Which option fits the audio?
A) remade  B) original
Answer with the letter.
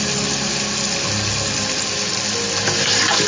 B